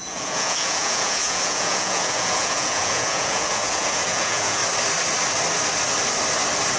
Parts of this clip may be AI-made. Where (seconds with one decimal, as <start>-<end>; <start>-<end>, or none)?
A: 0.0-4.6